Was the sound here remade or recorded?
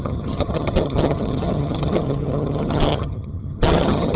remade